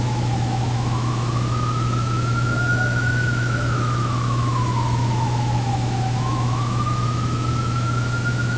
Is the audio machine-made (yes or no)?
yes